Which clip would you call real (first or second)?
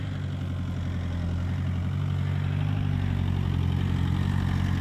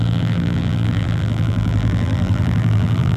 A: first